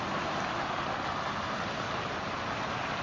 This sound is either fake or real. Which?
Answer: real